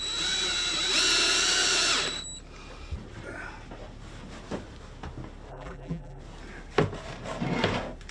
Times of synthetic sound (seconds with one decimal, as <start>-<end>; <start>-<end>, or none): 5.5-6.2